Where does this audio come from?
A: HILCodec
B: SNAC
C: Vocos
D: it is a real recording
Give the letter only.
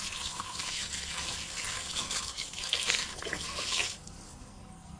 B